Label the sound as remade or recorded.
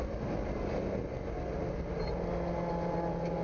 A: recorded